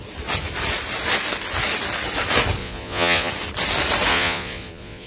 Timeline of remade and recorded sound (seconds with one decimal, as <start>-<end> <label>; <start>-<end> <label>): 0.0-2.6 recorded; 2.6-3.3 remade; 3.3-4.1 recorded; 4.1-5.1 remade